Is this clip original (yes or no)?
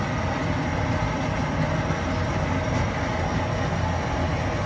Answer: yes